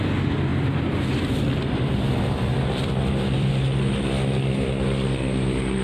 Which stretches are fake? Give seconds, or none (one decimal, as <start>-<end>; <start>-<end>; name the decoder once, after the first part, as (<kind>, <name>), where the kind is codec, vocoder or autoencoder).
0.5-3.5 (vocoder, BigVGAN v2)